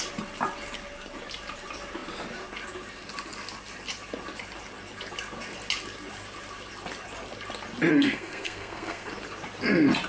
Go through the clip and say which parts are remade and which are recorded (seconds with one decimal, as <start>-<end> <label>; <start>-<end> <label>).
0.0-7.9 recorded; 7.9-9.1 remade; 9.1-10.1 recorded